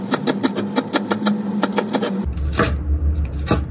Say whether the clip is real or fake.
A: real